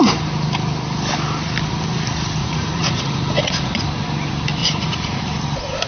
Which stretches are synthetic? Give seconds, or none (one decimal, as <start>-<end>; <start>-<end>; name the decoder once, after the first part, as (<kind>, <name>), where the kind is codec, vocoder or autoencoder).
2.4-3.8 (vocoder, Vocos); 4.6-5.2